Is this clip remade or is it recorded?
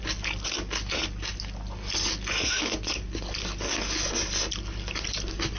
recorded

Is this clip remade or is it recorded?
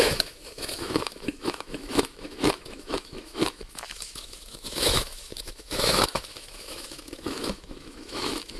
remade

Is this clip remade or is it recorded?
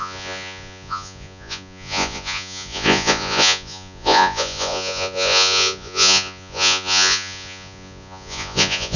remade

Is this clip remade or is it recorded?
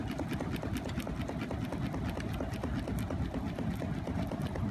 recorded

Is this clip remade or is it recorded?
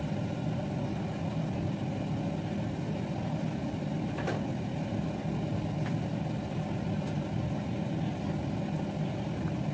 recorded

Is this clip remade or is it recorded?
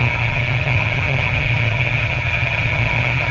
remade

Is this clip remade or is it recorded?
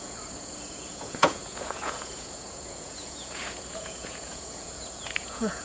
remade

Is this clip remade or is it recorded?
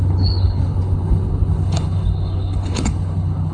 remade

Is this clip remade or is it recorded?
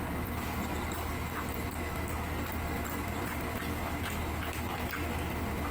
recorded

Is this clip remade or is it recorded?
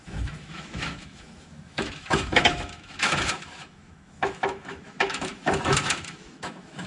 remade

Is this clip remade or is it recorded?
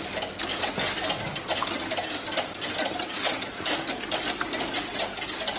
recorded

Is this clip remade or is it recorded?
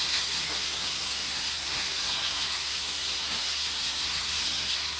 remade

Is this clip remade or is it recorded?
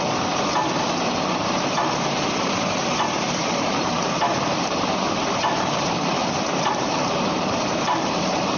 remade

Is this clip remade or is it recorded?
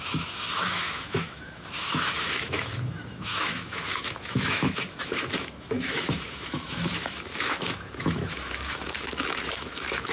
remade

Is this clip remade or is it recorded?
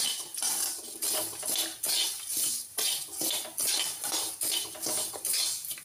recorded